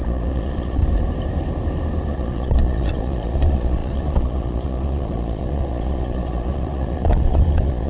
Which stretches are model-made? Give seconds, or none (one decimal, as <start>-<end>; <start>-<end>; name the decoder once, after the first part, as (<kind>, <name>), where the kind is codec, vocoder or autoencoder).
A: 0.0-0.8 (vocoder, Vocos); 2.1-7.9